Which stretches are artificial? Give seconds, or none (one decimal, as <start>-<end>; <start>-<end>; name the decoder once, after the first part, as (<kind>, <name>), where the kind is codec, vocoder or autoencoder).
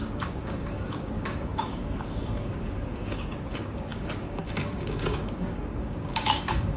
0.0-6.8 (codec, DAC)